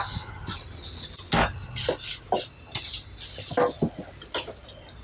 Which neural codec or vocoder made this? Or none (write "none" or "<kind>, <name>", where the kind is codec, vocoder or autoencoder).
none